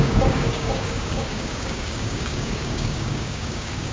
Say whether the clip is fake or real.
fake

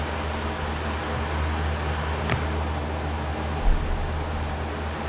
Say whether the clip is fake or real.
real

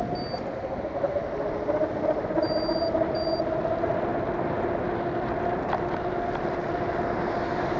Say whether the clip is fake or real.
real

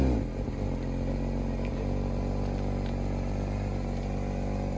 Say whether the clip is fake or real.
real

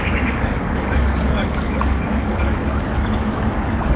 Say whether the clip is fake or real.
fake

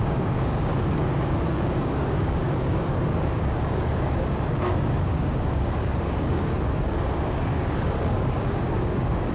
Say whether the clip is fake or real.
fake